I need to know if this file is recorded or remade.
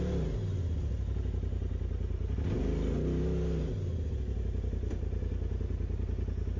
recorded